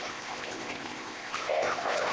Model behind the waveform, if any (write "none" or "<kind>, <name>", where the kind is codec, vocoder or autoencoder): codec, ZipCodec